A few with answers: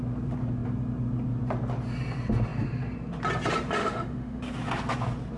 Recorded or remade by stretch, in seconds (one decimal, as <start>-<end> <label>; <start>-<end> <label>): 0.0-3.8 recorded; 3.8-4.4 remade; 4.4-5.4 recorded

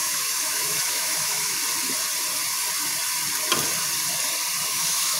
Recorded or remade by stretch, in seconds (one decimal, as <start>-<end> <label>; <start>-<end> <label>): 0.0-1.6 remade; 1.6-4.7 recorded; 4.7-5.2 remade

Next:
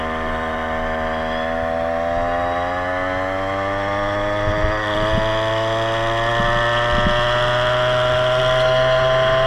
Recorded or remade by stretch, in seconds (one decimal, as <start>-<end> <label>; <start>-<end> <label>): 0.0-9.5 recorded

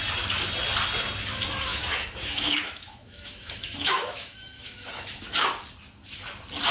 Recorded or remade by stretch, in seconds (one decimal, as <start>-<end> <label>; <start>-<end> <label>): 0.0-1.7 recorded; 1.7-5.5 remade; 5.5-6.7 recorded

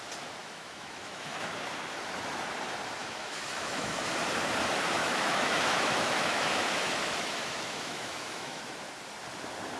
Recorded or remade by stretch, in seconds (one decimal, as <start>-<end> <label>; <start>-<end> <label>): 0.0-0.4 recorded; 0.4-1.5 remade; 1.5-3.0 recorded; 3.0-4.1 remade; 4.1-5.0 recorded; 5.0-8.6 remade; 8.6-9.8 recorded

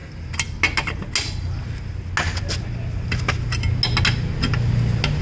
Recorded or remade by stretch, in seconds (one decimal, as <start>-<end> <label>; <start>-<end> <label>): 0.0-5.2 recorded

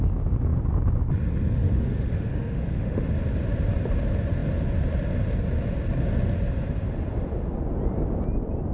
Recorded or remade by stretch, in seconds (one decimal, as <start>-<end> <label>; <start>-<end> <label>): 0.0-1.6 recorded; 1.6-3.1 remade; 3.1-8.7 recorded